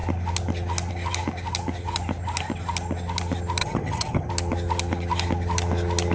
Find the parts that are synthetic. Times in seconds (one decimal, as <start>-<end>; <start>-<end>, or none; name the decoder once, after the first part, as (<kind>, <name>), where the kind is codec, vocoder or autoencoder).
3.6-4.3 (vocoder, HiFi-GAN)